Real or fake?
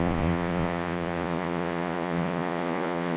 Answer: fake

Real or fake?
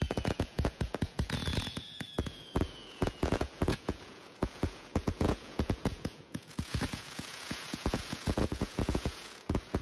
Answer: fake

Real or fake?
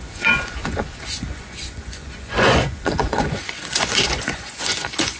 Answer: fake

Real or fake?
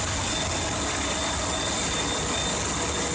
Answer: real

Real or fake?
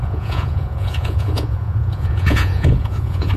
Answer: fake